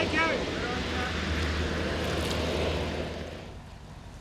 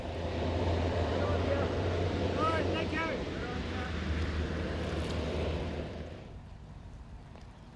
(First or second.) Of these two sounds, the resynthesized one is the second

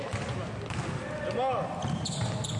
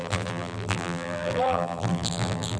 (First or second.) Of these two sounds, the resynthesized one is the second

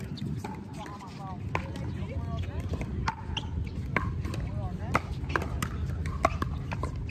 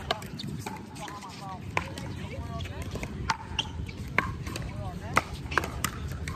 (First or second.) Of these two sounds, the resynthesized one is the second